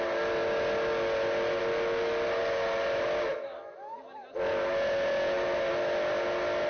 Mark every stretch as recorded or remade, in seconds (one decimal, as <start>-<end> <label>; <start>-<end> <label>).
0.0-6.7 recorded